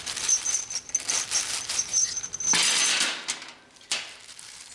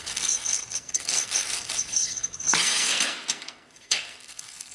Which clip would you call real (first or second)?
first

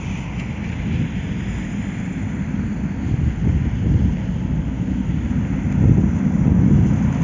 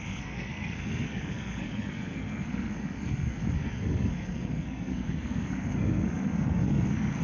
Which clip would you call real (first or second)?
first